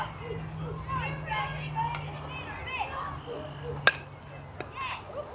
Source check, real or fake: real